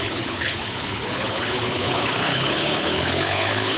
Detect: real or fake fake